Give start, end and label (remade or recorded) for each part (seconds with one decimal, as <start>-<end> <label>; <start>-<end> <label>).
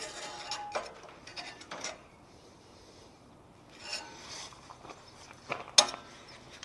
0.0-1.3 recorded; 1.3-3.3 remade; 3.3-3.9 recorded; 3.9-5.5 remade; 5.5-6.6 recorded